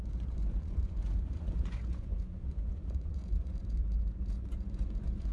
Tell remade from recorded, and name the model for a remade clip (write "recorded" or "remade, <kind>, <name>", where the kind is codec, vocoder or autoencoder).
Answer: remade, vocoder, Vocos